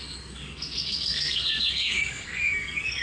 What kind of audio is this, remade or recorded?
remade